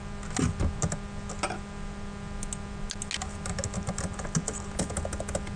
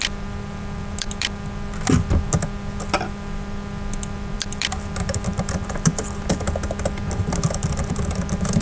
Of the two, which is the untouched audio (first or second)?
first